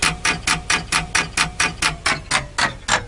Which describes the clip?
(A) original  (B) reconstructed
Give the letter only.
A